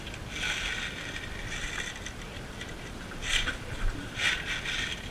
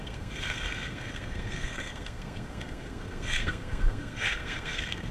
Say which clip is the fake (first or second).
second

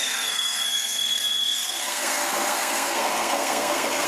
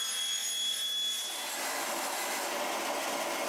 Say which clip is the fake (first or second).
first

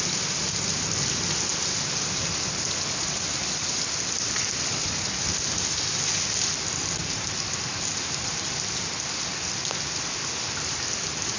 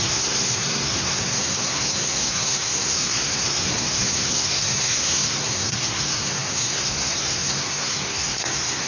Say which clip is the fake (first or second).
second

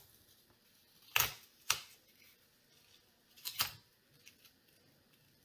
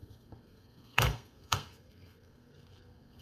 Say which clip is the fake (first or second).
second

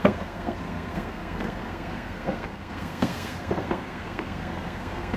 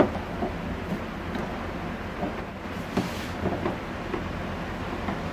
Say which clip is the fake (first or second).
first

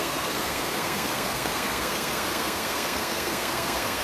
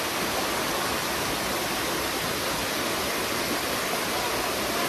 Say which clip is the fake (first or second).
first